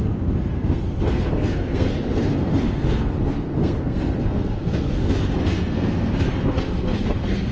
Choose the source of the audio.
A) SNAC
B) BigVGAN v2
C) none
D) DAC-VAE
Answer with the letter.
A